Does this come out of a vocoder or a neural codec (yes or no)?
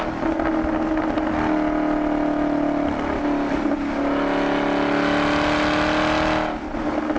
no